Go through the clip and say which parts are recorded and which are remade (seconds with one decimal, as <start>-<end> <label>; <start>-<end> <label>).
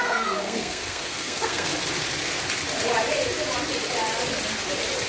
0.0-1.7 remade; 1.7-5.1 recorded